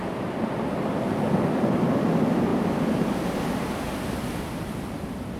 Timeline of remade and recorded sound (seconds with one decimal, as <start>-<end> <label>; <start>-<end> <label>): 0.0-5.4 recorded

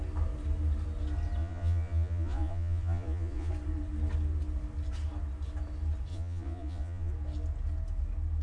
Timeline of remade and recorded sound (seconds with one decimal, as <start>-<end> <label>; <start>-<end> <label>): 0.0-1.4 recorded; 1.4-3.5 remade; 3.5-6.1 recorded; 6.1-7.1 remade; 7.1-8.4 recorded

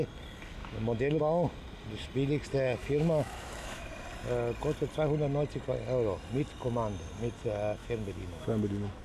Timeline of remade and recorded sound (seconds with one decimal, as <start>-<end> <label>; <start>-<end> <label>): 0.0-0.6 recorded; 0.6-1.2 remade; 1.2-2.8 recorded; 2.8-3.9 remade; 3.9-7.8 recorded; 7.8-9.0 remade